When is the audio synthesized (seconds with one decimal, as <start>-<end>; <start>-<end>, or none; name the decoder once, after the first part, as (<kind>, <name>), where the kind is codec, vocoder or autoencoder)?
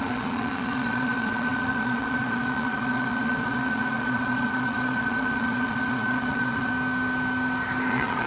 0.0-6.7 (vocoder, Vocos); 7.9-8.3